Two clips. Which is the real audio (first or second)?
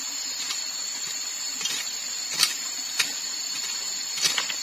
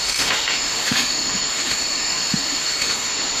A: first